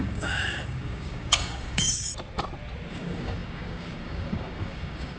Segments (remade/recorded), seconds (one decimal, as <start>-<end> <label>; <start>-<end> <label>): 0.0-2.1 remade; 2.1-2.9 recorded; 2.9-5.2 remade